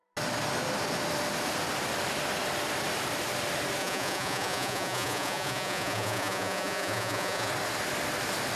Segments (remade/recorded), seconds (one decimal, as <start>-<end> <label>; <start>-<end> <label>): 0.0-3.8 recorded; 3.8-7.5 remade; 7.5-8.6 recorded